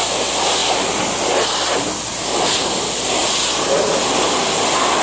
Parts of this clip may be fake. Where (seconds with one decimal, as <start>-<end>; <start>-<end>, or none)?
none

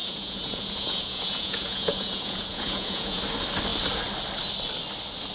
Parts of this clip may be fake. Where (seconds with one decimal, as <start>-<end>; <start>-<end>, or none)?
0.0-3.2